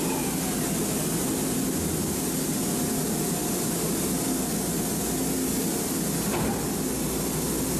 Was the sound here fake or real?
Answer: real